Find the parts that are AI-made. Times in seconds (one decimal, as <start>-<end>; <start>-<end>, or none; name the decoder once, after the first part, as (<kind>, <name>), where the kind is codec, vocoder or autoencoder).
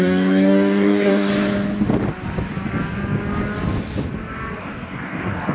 0.0-1.3 (codec, DAC); 4.6-5.5